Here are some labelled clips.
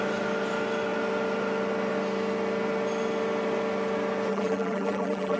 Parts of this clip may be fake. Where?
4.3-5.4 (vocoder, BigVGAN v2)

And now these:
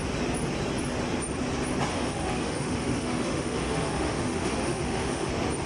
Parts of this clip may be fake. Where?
1.9-5.3 (autoencoder, DAC-VAE)

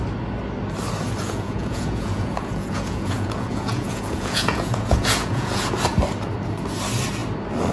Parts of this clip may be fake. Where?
1.2-5.7 (vocoder, Vocos)

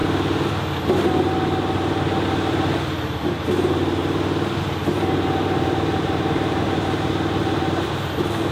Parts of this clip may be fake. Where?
2.8-4.0 (vocoder, BigVGAN v2); 4.6-8.5

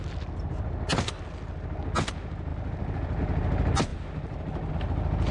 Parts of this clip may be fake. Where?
none

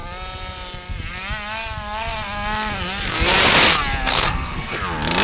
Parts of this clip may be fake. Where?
4.1-4.8 (codec, SNAC)